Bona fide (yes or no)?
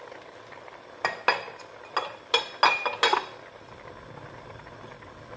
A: yes